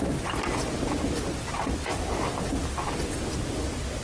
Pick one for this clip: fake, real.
real